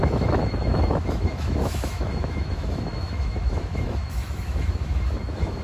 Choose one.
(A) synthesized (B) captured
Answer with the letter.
A